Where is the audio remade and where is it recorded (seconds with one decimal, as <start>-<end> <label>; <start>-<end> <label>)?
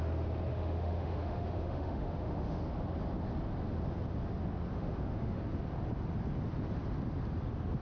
0.0-0.5 recorded; 0.5-2.6 remade; 2.6-4.7 recorded; 4.7-5.4 remade; 5.4-7.8 recorded